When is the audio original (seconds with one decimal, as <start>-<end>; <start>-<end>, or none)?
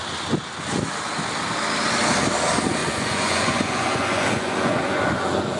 0.0-2.8